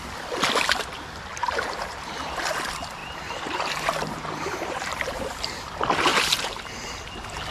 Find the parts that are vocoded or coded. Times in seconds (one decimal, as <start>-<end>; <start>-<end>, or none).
1.3-2.5; 3.0-5.5; 6.1-6.7